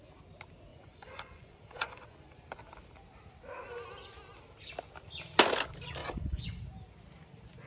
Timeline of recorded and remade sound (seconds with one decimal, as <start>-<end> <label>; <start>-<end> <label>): 0.0-0.7 recorded; 0.7-2.3 remade; 2.3-6.0 recorded; 6.0-6.6 remade; 6.6-7.7 recorded